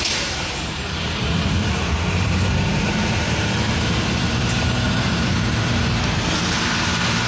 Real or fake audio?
fake